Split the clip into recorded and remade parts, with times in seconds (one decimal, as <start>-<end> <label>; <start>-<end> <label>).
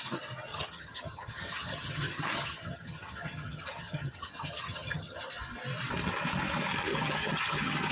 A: 0.0-0.5 recorded; 0.5-5.2 remade; 5.2-6.9 recorded; 6.9-7.9 remade